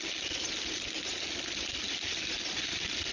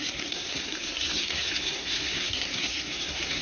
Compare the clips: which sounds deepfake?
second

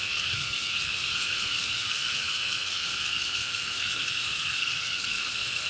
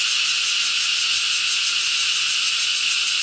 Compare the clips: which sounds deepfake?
first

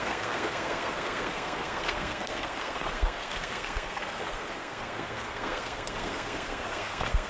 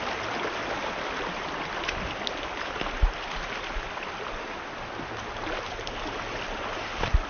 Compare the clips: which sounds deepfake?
first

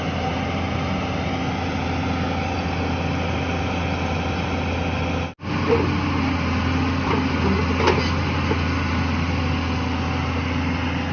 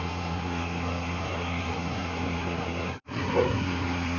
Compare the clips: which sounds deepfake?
second